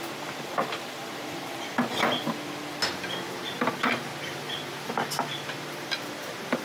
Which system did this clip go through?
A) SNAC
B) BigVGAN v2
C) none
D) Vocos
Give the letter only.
C